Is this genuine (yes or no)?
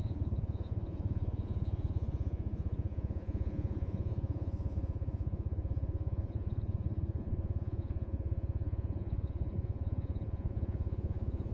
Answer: no